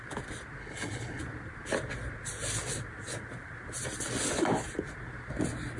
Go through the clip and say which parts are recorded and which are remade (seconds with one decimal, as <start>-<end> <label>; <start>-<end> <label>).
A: 0.0-0.6 recorded; 0.6-1.2 remade; 1.2-5.8 recorded